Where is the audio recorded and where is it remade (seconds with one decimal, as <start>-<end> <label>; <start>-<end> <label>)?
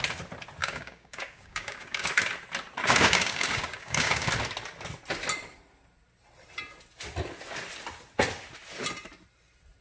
0.0-0.6 recorded; 0.6-2.1 remade; 2.1-2.8 recorded; 2.8-4.3 remade; 4.3-9.8 recorded